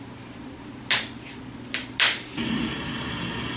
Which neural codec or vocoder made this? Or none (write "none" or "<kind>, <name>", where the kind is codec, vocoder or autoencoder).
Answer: none